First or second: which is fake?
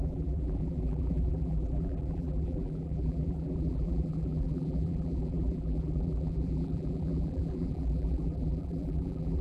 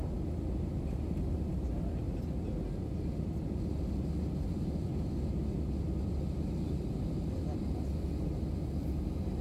first